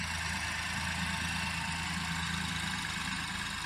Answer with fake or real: real